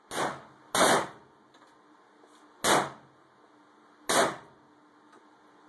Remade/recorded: recorded